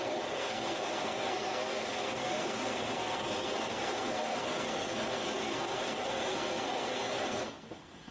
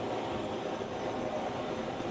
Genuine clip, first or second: second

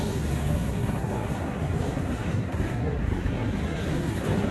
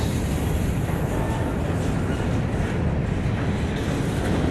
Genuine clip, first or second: second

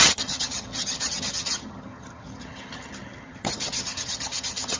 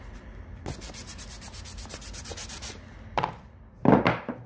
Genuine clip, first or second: second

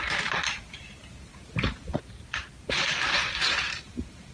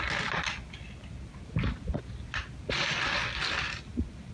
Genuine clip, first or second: second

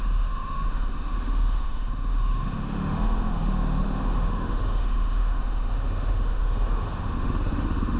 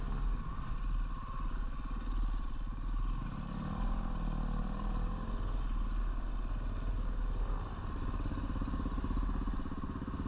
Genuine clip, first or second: second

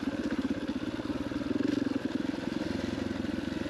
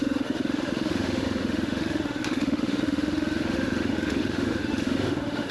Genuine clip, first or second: first